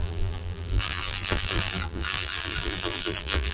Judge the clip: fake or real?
fake